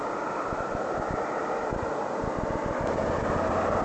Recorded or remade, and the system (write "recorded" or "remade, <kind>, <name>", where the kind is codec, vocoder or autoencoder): recorded